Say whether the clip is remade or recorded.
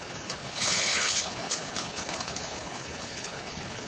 remade